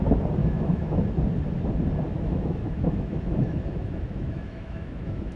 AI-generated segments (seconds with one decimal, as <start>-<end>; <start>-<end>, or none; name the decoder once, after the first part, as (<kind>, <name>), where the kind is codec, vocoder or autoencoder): 0.4-1.0 (autoencoder, DAC-VAE); 2.1-5.4